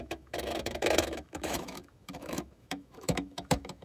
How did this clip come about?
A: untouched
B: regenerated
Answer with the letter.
B